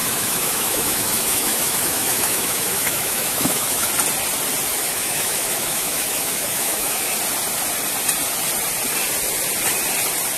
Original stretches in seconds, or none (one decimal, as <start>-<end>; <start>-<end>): 3.9-4.7; 7.1-10.4